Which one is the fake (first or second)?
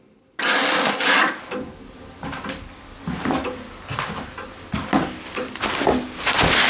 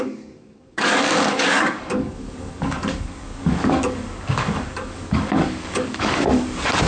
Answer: second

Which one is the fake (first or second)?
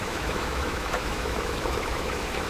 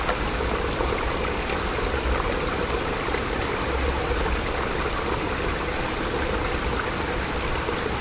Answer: first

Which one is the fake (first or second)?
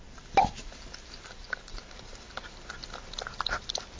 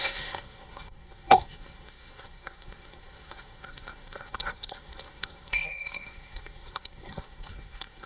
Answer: second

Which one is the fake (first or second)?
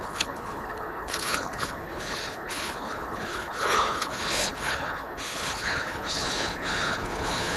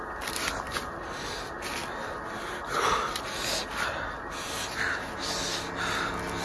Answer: first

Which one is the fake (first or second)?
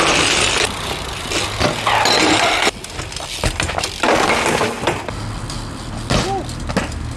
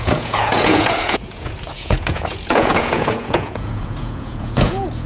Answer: second